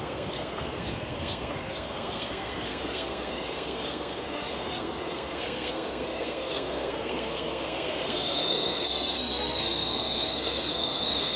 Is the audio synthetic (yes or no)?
yes